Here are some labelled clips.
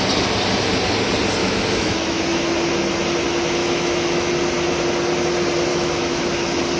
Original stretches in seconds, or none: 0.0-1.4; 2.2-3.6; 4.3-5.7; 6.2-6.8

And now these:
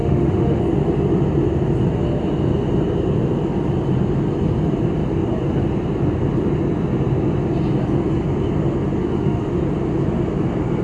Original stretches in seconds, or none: 0.6-9.0; 9.6-10.8

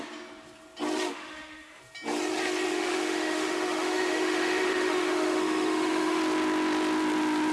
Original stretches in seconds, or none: 0.0-1.1; 1.8-2.7; 6.2-7.5

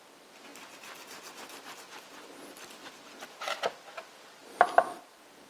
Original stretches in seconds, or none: 0.0-5.5

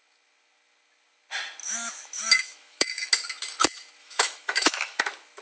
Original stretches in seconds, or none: 0.0-1.6; 3.1-4.0; 5.0-5.4

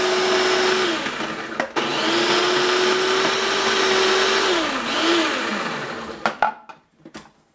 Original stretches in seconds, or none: 0.0-7.5

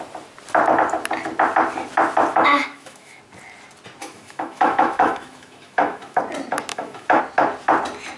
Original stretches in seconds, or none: 0.0-2.3; 3.2-4.0; 6.2-6.7; 7.2-8.2